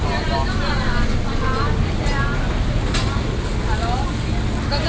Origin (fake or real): real